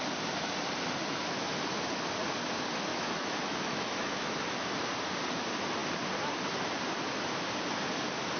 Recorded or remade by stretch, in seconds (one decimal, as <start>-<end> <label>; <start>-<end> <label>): 0.0-2.9 recorded; 2.9-4.4 remade; 4.4-8.4 recorded